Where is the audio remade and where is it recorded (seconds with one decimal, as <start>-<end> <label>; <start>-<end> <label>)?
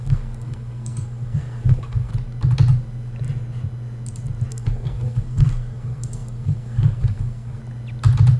0.0-2.1 remade; 2.1-4.5 recorded; 4.5-7.6 remade; 7.6-8.4 recorded